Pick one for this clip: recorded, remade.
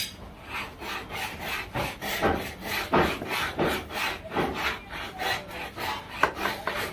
remade